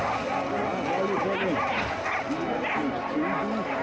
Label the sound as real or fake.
real